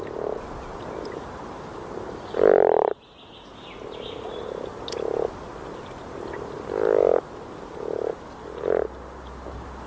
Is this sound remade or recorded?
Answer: recorded